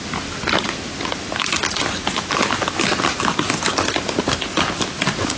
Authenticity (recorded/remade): recorded